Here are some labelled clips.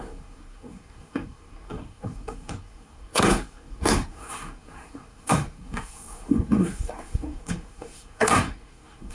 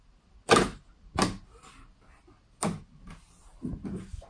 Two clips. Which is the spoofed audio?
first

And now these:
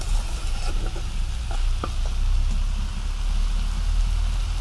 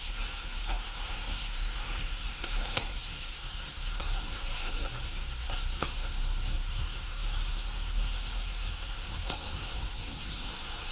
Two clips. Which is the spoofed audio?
second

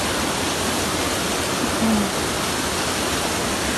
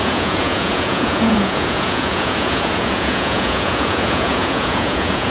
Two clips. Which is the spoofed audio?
second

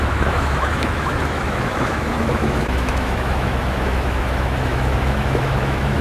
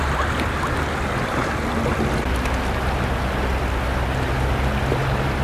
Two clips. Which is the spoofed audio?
first